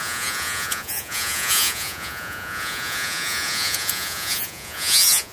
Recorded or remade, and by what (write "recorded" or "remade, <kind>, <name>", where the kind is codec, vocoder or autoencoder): remade, vocoder, Vocos